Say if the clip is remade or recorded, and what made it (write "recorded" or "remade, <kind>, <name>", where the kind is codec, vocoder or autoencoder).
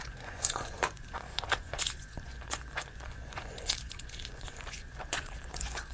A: remade, vocoder, Vocos